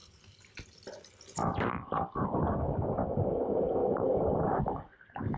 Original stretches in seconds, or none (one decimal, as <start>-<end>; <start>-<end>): 3.8-4.6